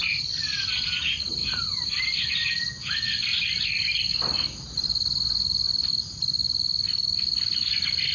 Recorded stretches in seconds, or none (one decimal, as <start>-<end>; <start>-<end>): 0.0-8.1

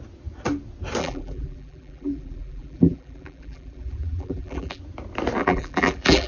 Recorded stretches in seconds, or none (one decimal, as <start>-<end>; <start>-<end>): 0.0-1.0; 4.8-5.4

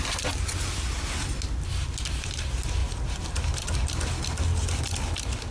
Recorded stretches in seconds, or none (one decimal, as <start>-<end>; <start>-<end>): 0.0-5.5

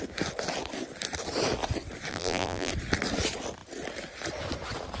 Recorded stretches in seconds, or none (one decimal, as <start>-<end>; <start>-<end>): 0.0-2.1; 2.7-5.0

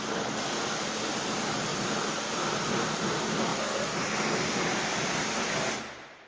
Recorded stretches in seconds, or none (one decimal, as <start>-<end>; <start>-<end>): 0.0-1.7; 2.4-3.5; 4.1-6.3

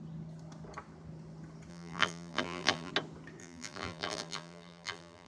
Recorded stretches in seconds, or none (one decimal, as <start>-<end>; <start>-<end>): 0.0-1.7; 2.9-3.4

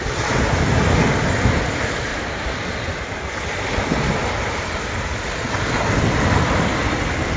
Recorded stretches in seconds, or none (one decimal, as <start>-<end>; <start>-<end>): 0.0-7.4